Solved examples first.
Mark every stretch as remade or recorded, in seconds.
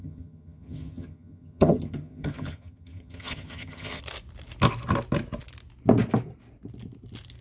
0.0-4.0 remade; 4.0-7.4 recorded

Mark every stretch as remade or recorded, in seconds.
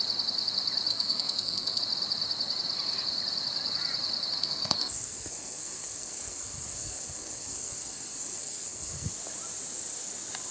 0.0-0.9 recorded; 0.9-1.8 remade; 1.8-4.4 recorded; 4.4-9.1 remade; 9.1-10.5 recorded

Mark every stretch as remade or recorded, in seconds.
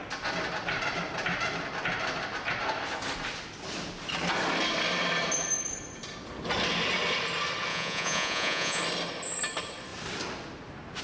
0.0-7.7 recorded; 7.7-8.8 remade; 8.8-11.0 recorded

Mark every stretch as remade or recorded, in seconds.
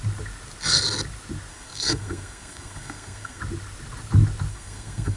0.0-1.5 recorded; 1.5-3.4 remade; 3.4-4.5 recorded; 4.5-5.2 remade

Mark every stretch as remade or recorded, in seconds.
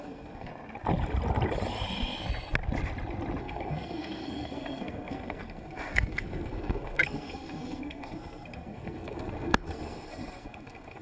0.0-0.5 remade; 0.5-3.4 recorded; 3.4-11.0 remade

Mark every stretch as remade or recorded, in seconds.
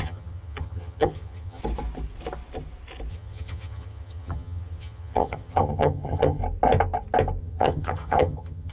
0.0-1.6 remade; 1.6-3.1 recorded; 3.1-6.4 remade; 6.4-7.4 recorded; 7.4-8.7 remade